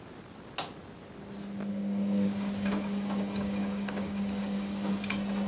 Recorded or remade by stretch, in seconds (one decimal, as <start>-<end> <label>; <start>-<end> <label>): 0.0-1.7 recorded; 1.7-4.9 remade; 4.9-5.5 recorded